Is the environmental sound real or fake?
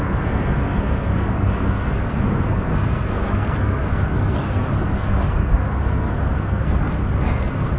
fake